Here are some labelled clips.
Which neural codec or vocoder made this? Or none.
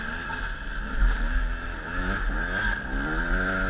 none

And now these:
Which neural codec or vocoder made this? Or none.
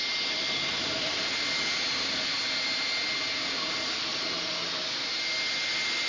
none